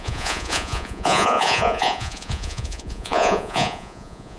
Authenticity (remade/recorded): remade